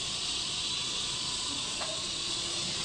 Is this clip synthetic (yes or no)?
yes